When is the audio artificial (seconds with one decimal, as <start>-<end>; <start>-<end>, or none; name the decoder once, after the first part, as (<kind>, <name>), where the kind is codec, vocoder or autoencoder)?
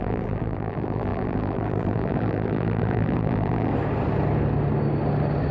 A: 0.0-3.7 (vocoder, BigVGAN v2)